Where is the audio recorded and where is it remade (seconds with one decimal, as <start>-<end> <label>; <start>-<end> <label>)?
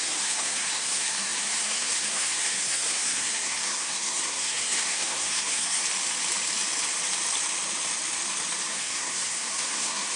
0.0-5.8 remade; 5.8-8.7 recorded; 8.7-10.2 remade